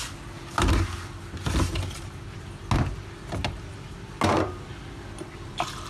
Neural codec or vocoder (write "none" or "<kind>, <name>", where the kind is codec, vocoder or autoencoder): none